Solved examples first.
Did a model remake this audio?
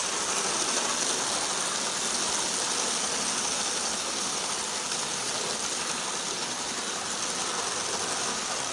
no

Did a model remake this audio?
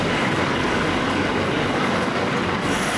yes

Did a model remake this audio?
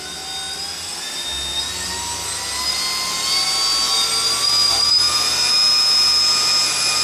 no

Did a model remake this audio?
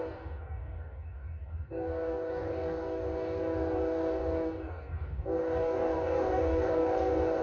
yes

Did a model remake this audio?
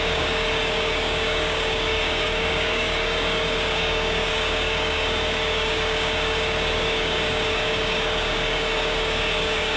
yes